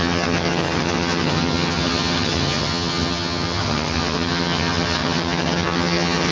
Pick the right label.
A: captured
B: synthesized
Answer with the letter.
B